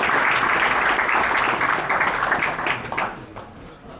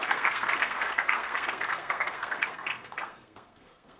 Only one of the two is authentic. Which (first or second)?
first